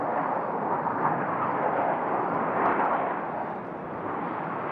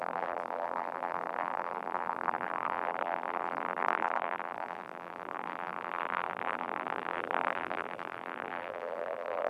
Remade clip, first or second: second